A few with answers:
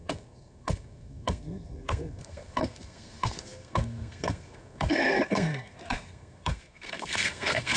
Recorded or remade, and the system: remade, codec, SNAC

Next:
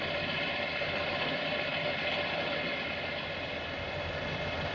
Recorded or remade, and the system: remade, vocoder, BigVGAN v2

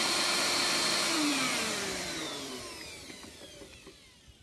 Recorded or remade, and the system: remade, vocoder, BigVGAN v2